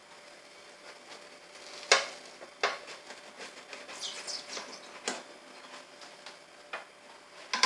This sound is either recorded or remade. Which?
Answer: recorded